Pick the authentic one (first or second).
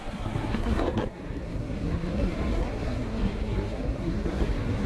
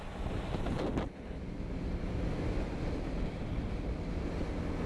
second